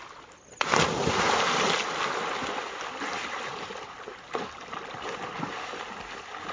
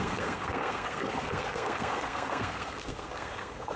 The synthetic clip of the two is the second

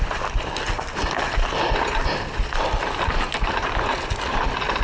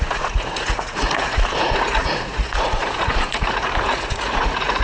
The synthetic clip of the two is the second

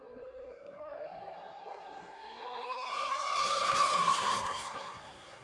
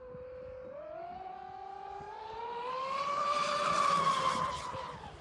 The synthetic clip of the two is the first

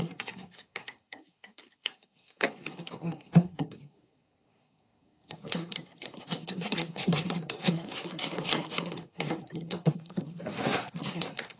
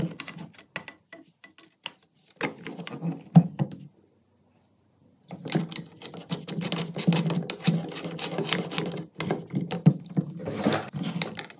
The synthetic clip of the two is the first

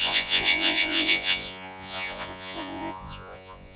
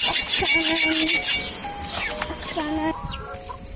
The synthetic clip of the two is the first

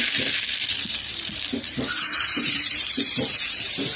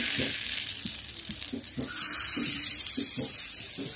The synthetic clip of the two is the first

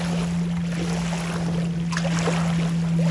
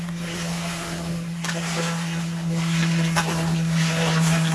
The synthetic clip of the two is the second